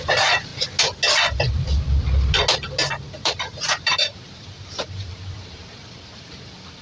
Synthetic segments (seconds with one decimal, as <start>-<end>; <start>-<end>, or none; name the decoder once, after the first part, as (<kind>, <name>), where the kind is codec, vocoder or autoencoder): 0.0-0.5 (vocoder, BigVGAN v2); 3.2-6.8